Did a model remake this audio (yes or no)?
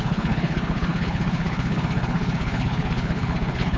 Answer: yes